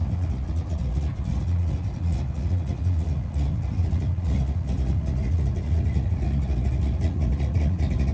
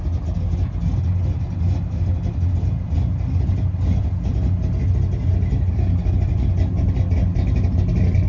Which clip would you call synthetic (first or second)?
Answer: first